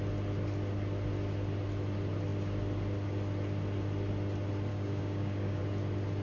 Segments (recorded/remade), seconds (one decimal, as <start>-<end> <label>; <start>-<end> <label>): 0.0-4.7 recorded; 4.7-5.6 remade; 5.6-6.2 recorded